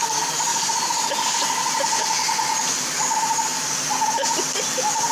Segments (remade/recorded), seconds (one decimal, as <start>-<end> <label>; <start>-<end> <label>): 0.0-5.1 recorded